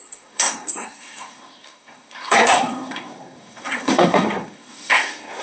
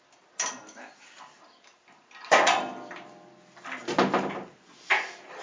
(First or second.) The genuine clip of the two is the second